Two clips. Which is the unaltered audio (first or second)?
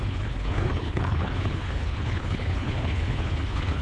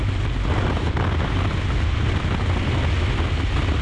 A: second